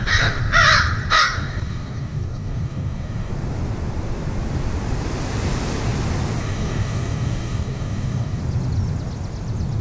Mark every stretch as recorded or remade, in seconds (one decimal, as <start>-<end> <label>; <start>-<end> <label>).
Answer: 0.0-0.4 remade; 0.4-1.1 recorded; 1.1-3.3 remade; 3.3-6.4 recorded; 6.4-8.4 remade; 8.4-9.8 recorded